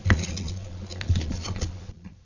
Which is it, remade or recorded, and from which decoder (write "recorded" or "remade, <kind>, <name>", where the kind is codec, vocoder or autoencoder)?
remade, vocoder, Vocos